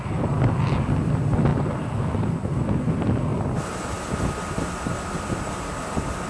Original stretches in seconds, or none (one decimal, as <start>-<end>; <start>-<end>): 0.0-6.3